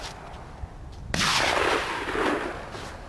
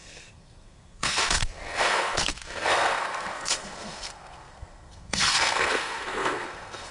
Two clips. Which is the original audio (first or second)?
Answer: first